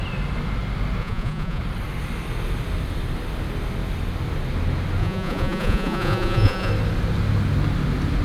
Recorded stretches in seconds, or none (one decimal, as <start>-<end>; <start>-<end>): 0.0-1.0; 1.6-5.0; 6.7-8.2